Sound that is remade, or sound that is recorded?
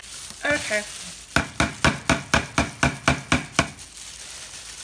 recorded